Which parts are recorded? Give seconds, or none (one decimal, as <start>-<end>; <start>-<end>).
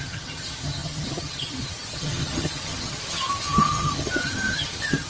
none